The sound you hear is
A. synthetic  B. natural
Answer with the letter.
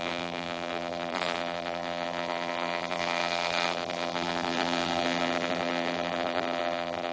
A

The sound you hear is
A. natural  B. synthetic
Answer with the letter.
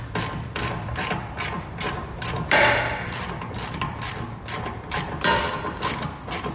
B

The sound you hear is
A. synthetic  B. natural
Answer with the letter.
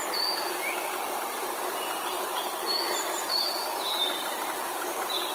A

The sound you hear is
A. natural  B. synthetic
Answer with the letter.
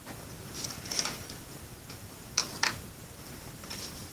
A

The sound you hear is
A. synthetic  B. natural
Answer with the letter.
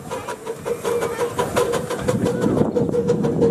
B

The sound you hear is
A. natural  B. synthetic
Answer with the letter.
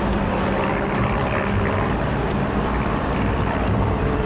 B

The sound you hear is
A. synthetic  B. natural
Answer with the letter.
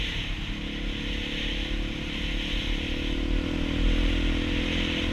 B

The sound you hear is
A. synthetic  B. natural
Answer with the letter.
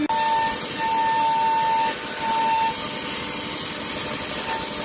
B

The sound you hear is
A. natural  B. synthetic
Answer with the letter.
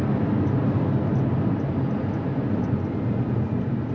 A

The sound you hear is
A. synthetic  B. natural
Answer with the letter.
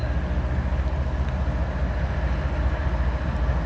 B